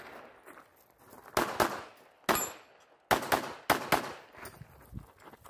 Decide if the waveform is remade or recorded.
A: recorded